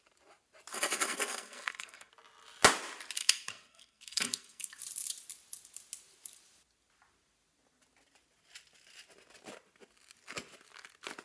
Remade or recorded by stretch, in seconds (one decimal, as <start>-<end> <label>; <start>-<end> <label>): 0.0-0.7 recorded; 0.7-2.1 remade; 2.1-3.2 recorded; 3.2-4.8 remade; 4.8-11.2 recorded